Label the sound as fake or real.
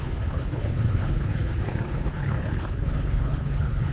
fake